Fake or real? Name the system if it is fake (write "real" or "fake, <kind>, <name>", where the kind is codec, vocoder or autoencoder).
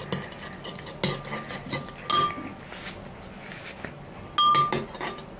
real